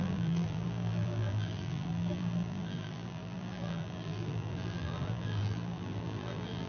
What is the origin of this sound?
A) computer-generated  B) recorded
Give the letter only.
A